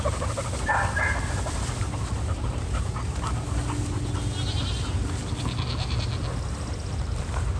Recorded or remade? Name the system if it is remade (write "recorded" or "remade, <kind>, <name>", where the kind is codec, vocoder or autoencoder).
recorded